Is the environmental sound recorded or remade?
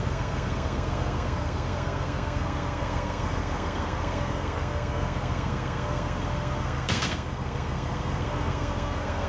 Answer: remade